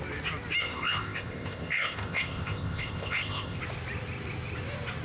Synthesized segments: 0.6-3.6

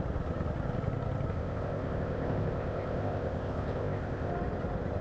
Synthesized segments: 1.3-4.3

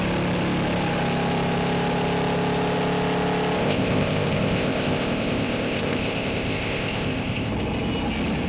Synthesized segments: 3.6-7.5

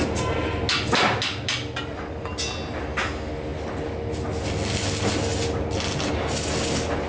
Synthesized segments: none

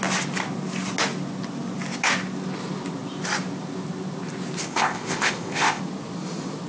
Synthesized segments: 4.6-5.8

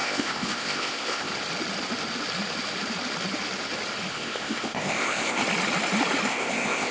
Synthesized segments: 0.0-1.3; 4.1-5.4; 6.3-6.9